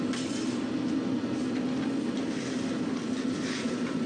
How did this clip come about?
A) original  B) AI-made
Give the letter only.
A